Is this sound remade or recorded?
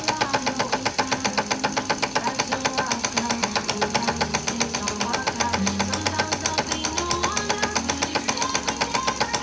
recorded